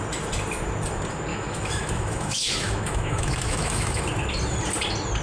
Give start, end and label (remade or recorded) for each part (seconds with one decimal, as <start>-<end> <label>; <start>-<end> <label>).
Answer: 0.0-1.3 recorded; 1.3-4.0 remade; 4.0-5.2 recorded